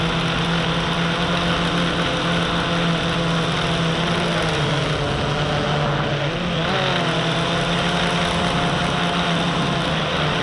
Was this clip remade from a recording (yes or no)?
no